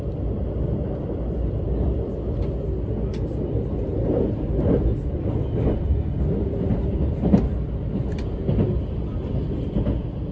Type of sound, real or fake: real